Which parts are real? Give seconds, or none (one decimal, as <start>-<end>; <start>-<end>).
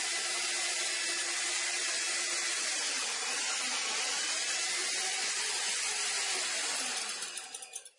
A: 0.0-4.8; 5.9-8.0